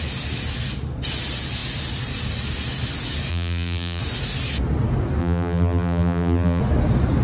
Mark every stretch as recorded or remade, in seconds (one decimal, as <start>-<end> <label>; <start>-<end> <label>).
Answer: 0.0-3.3 recorded; 3.3-4.0 remade; 4.0-5.2 recorded; 5.2-6.6 remade; 6.6-7.2 recorded

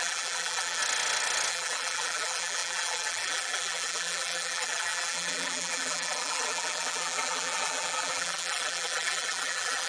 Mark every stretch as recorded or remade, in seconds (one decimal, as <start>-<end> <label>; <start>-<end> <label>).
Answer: 0.0-0.8 remade; 0.8-1.5 recorded; 1.5-9.9 remade

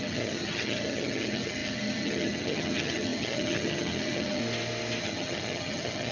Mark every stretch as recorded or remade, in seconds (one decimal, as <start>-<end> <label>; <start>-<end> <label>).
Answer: 0.0-4.4 remade; 4.4-5.0 recorded; 5.0-6.1 remade

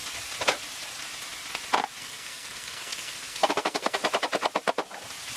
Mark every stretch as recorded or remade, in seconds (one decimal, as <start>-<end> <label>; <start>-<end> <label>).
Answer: 0.0-2.0 recorded; 2.0-4.0 remade; 4.0-5.4 recorded

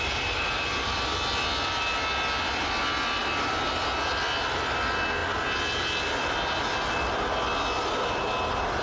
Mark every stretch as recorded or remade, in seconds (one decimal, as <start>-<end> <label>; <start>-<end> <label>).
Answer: 0.0-3.2 recorded; 3.2-3.9 remade; 3.9-8.8 recorded

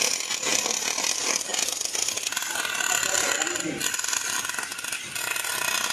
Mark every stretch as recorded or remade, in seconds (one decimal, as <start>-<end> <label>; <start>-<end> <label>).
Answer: 0.0-5.9 recorded

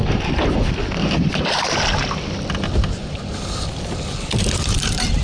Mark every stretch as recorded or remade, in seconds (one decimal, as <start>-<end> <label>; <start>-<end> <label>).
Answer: 0.0-5.2 recorded